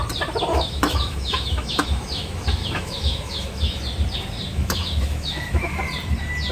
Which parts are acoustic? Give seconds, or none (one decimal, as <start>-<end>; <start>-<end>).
0.0-0.5; 3.8-4.5; 5.8-6.5